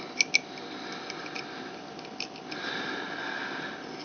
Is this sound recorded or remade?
recorded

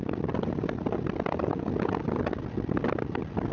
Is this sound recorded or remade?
recorded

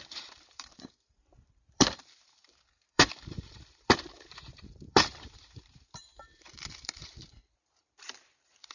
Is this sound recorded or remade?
remade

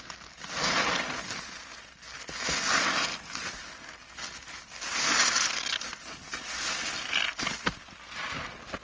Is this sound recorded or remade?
recorded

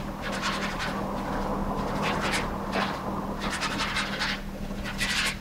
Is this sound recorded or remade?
recorded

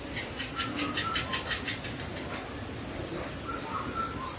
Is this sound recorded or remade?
remade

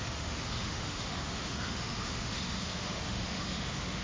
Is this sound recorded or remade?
remade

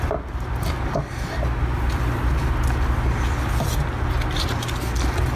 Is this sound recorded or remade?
recorded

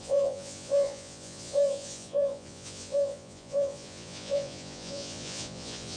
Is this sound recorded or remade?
remade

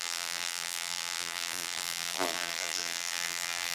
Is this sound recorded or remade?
remade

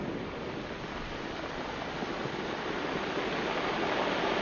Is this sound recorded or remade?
recorded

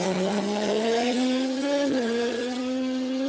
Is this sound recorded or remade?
remade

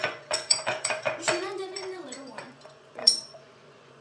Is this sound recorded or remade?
remade